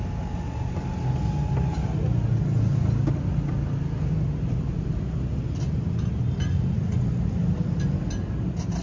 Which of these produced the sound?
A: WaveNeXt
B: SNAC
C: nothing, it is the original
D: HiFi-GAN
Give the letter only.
C